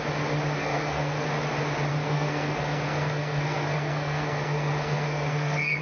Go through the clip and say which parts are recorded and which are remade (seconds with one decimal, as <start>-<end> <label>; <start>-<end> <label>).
0.0-0.6 recorded; 0.6-1.3 remade; 1.3-1.9 recorded; 1.9-5.8 remade